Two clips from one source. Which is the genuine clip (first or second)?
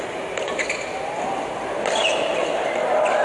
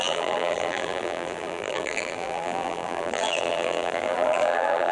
first